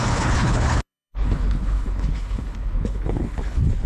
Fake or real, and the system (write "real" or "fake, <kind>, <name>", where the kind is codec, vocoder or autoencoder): fake, codec, HILCodec